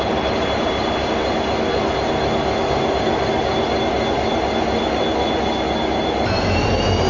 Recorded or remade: recorded